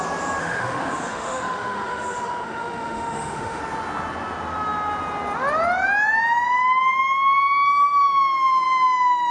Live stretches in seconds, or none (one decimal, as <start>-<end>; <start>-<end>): 0.0-0.4; 3.6-9.3